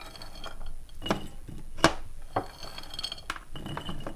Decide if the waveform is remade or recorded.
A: recorded